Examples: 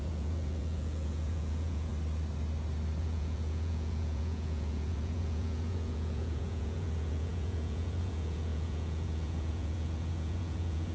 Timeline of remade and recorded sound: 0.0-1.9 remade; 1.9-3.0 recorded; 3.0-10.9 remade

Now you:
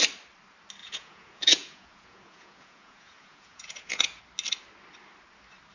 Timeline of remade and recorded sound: 0.0-0.8 recorded; 0.8-4.2 remade; 4.2-5.7 recorded

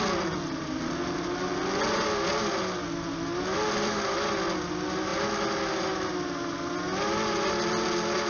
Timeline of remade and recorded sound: 0.0-8.3 recorded